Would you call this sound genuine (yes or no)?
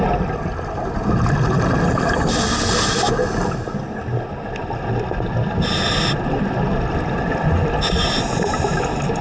yes